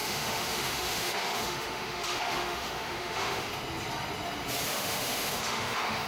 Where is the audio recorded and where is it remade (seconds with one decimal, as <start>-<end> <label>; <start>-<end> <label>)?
0.0-3.5 remade; 3.5-4.7 recorded; 4.7-6.1 remade